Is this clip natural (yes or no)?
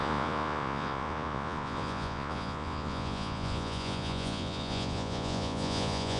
no